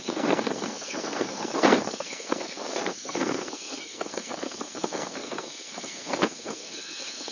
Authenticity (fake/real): fake